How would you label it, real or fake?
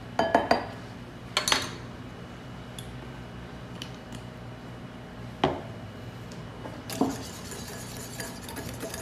real